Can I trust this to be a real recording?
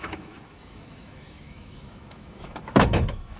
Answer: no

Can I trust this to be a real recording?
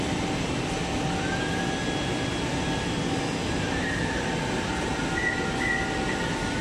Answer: yes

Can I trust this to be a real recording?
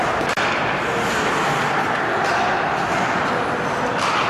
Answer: yes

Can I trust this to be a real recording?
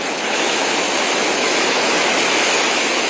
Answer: no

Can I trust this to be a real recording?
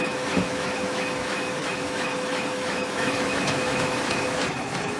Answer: no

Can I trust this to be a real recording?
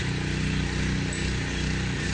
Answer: yes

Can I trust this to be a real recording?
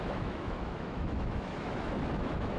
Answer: no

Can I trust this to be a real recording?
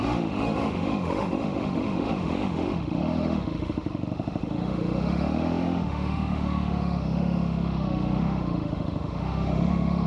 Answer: no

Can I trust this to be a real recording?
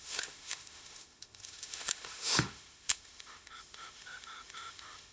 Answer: no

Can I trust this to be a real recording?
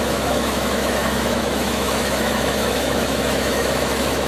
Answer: no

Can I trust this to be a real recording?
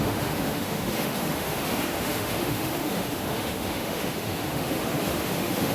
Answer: no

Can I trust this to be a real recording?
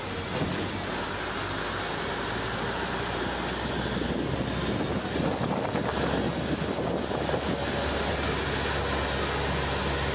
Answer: yes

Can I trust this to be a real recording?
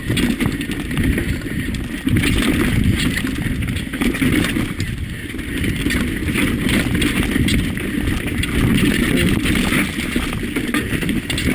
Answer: yes